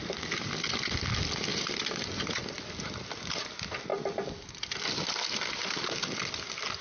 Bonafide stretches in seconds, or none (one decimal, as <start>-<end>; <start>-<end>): 0.0-1.5; 2.4-6.8